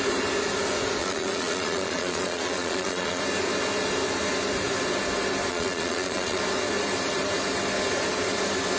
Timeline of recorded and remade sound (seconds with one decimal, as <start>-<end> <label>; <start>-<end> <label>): 0.0-1.0 recorded; 1.0-3.2 remade; 3.2-5.5 recorded; 5.5-6.4 remade; 6.4-8.8 recorded